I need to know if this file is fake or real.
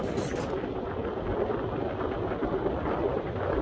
real